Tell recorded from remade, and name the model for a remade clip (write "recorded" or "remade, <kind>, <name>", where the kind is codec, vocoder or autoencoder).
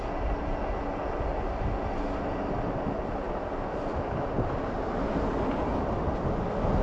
recorded